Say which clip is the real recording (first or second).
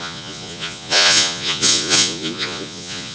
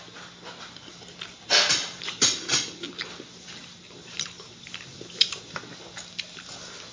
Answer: second